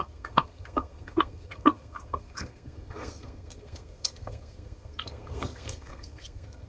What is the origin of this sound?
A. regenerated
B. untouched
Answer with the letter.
A